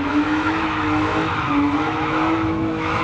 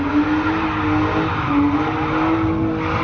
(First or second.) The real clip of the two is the second